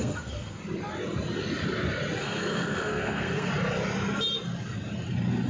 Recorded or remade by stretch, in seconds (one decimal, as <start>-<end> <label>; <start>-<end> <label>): 0.0-0.6 remade; 0.6-2.2 recorded; 2.2-3.5 remade; 3.5-5.5 recorded